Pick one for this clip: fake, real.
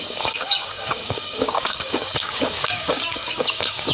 fake